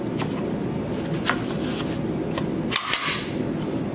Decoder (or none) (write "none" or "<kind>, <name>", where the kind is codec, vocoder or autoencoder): none